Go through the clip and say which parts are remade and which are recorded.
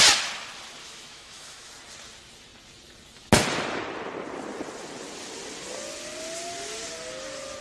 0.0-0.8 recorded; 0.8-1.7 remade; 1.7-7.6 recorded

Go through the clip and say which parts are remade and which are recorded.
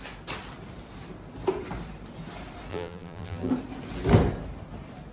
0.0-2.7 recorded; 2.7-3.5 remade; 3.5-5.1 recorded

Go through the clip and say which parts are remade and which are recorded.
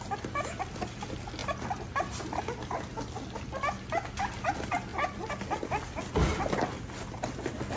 0.0-7.8 recorded